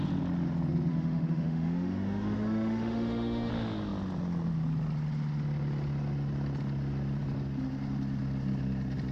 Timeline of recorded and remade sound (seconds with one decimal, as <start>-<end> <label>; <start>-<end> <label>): 0.0-0.9 recorded; 0.9-3.5 remade; 3.5-9.1 recorded